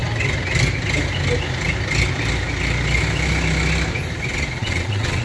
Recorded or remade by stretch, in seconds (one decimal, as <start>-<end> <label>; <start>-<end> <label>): 0.0-4.6 recorded; 4.6-5.2 remade